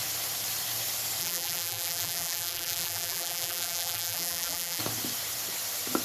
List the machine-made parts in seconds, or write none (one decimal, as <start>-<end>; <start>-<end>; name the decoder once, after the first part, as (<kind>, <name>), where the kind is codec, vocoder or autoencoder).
1.2-4.8 (vocoder, BigVGAN v2)